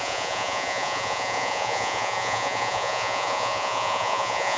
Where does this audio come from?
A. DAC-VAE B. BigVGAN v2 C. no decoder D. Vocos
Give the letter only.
D